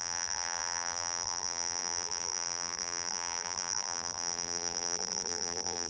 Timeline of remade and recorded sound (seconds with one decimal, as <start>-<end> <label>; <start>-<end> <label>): 0.0-5.9 remade